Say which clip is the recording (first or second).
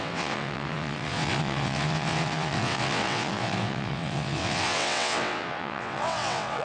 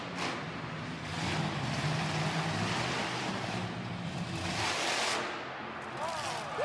second